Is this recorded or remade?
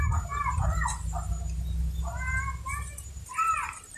recorded